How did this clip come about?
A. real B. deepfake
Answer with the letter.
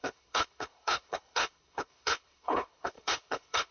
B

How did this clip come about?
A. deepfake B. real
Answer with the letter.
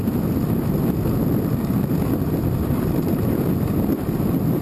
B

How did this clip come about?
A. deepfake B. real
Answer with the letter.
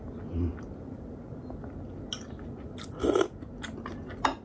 B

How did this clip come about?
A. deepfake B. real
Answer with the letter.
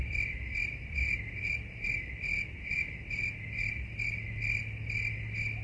B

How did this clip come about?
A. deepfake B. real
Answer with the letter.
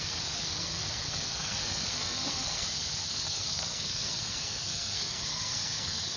A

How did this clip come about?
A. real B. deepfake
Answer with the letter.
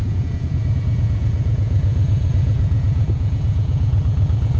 B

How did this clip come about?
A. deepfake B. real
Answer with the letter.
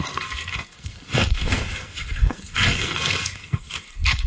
A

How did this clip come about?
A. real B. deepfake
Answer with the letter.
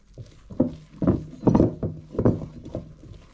A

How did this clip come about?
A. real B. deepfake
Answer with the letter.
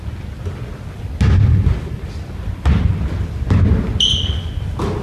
A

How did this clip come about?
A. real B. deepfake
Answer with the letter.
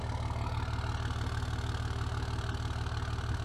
A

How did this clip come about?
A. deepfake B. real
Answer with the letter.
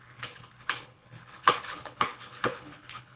A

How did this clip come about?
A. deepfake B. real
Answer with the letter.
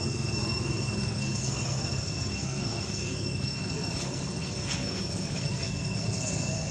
A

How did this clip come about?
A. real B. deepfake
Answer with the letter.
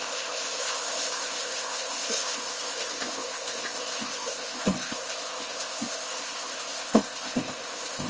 B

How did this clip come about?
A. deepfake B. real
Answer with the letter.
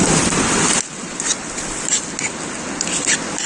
B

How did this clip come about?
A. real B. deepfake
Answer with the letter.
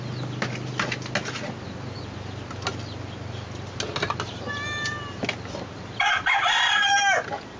A